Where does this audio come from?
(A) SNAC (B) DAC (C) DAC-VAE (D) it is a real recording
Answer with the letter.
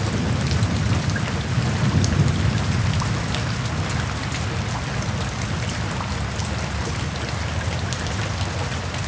D